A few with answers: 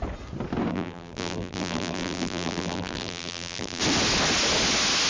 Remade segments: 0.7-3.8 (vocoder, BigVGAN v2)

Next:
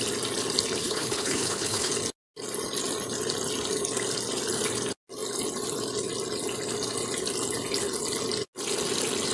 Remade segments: 0.8-1.9 (codec, HILCodec)

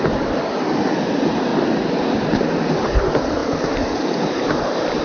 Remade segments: none

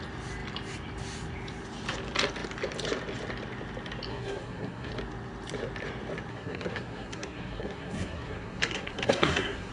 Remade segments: 4.1-4.9 (codec, SNAC); 6.3-9.7